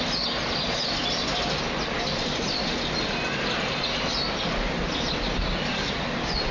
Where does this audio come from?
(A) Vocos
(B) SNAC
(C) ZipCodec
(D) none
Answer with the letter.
D